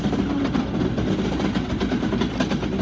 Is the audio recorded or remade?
recorded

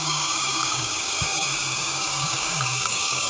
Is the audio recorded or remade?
remade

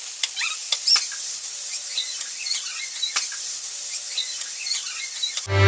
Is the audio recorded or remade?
recorded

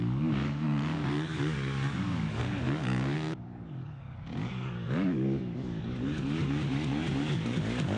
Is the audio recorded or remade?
remade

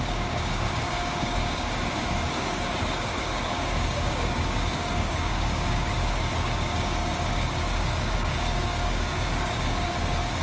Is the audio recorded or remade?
remade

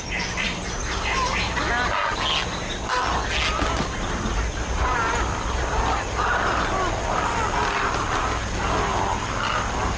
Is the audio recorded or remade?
recorded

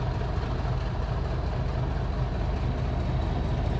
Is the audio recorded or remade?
recorded